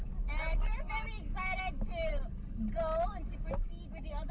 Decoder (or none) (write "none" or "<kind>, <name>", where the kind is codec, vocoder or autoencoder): none